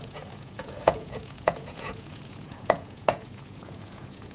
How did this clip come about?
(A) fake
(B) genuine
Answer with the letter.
A